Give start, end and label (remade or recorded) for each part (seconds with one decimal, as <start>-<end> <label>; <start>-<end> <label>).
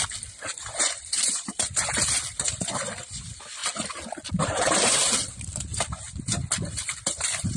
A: 0.0-3.6 remade; 3.6-4.3 recorded; 4.3-7.6 remade